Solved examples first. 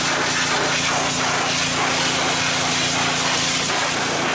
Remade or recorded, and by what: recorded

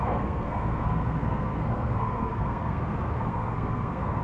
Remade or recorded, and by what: remade, codec, SNAC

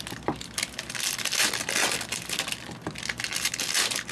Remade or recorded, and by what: recorded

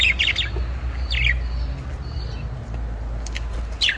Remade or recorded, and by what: recorded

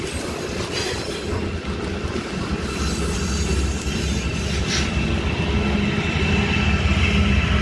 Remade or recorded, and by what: recorded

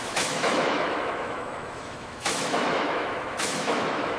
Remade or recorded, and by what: remade, autoencoder, DAC-VAE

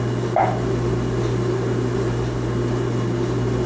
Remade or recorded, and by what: recorded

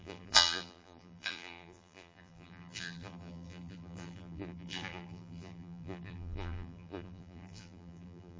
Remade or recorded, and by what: remade, vocoder, BigVGAN v2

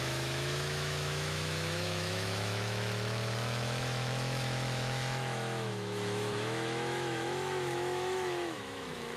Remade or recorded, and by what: remade, autoencoder, DAC-VAE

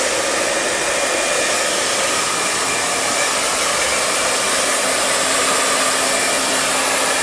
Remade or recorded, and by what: recorded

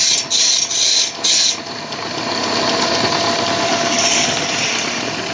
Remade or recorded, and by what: recorded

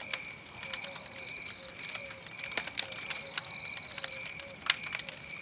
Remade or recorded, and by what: recorded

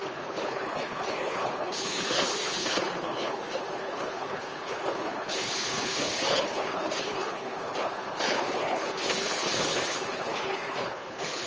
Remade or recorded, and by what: remade, codec, HILCodec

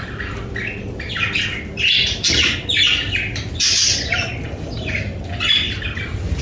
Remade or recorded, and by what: recorded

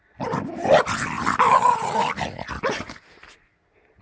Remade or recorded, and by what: recorded